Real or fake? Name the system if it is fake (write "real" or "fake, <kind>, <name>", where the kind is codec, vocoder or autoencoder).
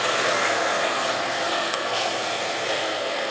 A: fake, codec, SNAC